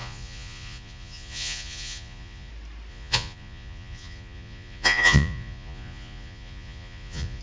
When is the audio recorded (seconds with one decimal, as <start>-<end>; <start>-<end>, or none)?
2.5-2.9